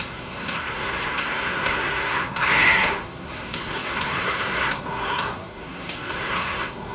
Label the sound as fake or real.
fake